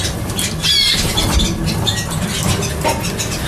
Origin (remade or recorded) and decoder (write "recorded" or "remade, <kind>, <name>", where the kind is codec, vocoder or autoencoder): recorded